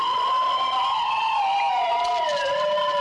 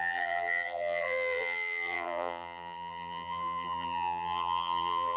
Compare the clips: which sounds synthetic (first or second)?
second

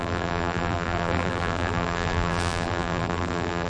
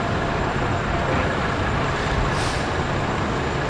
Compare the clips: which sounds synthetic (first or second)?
first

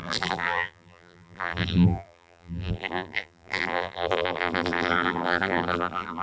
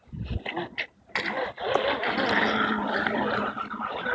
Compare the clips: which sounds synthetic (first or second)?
first